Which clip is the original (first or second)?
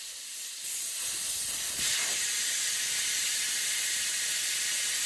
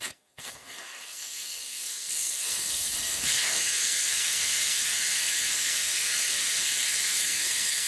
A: first